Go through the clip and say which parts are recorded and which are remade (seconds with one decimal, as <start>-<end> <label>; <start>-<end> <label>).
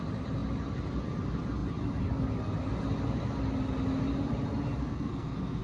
0.0-4.8 recorded; 4.8-5.6 remade